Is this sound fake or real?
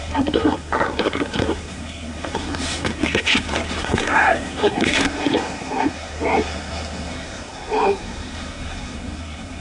fake